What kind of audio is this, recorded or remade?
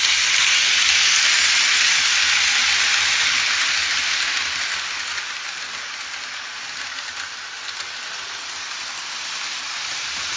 recorded